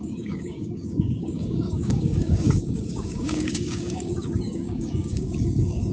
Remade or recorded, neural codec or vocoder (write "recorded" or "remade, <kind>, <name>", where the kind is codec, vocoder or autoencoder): remade, codec, DAC